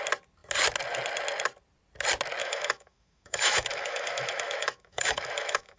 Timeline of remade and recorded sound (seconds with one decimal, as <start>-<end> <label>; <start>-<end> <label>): 0.0-2.4 recorded; 2.4-5.8 remade